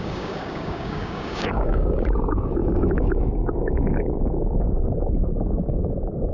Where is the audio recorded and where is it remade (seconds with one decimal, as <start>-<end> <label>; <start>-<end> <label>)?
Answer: 0.0-6.3 remade